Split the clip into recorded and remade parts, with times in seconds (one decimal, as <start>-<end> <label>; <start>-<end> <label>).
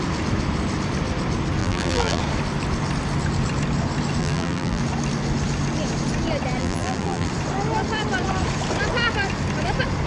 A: 0.0-1.6 recorded; 1.6-2.2 remade; 2.2-4.2 recorded; 4.2-4.8 remade; 4.8-6.6 recorded; 6.6-7.3 remade; 7.3-10.1 recorded